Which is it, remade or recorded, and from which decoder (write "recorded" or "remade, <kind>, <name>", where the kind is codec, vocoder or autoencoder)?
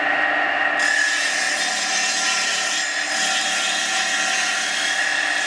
recorded